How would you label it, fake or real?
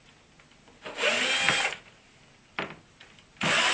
real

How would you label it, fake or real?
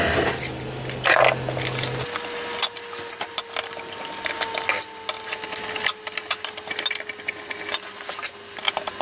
real